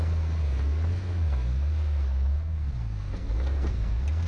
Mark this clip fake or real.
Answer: fake